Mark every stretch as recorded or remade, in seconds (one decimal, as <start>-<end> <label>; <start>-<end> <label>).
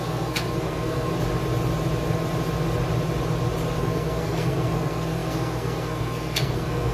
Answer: 0.0-1.1 remade; 1.1-3.8 recorded; 3.8-6.9 remade